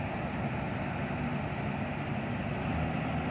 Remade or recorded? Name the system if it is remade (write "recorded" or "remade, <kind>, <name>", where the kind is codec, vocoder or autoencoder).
recorded